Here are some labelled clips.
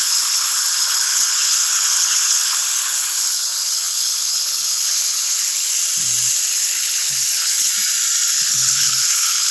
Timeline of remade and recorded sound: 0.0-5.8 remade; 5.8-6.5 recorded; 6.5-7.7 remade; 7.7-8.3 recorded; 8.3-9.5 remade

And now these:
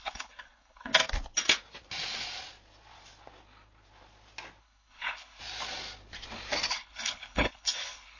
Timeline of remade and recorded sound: 0.0-0.9 remade; 0.9-4.6 recorded; 4.6-5.4 remade; 5.4-6.7 recorded; 6.7-8.2 remade

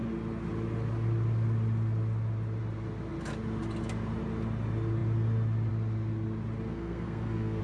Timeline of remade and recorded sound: 0.0-6.7 recorded; 6.7-7.6 remade

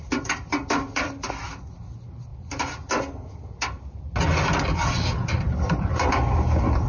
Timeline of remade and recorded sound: 0.0-6.9 recorded

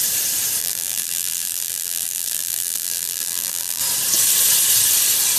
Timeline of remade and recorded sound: 0.0-0.6 recorded; 0.6-3.8 remade; 3.8-5.4 recorded

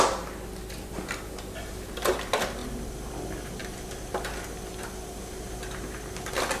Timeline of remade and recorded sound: 0.0-6.6 recorded

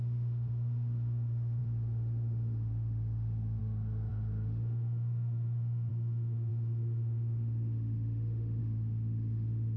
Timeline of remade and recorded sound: 0.0-9.8 remade

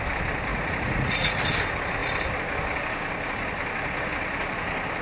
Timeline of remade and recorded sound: 0.0-0.5 recorded; 0.5-1.4 remade; 1.4-5.0 recorded